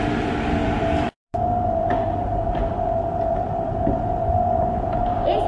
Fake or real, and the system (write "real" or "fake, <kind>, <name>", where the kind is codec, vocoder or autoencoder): fake, vocoder, BigVGAN v2